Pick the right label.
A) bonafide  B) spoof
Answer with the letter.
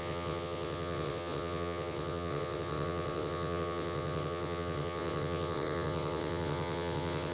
B